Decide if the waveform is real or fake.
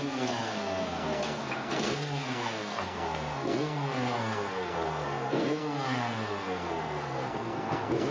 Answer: fake